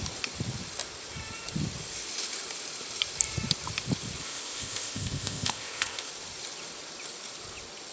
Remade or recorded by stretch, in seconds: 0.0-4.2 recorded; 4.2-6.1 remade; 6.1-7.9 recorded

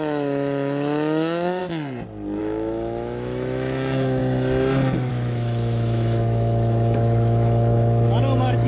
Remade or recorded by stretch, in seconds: 0.0-1.6 remade; 1.6-2.4 recorded; 2.4-4.2 remade; 4.2-5.1 recorded; 5.1-8.7 remade

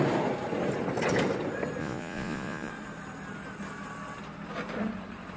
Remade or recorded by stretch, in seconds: 0.0-1.8 recorded; 1.8-2.7 remade; 2.7-5.4 recorded